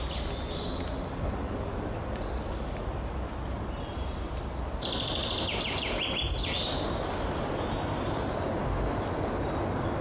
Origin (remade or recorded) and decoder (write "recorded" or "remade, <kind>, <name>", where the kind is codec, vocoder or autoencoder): recorded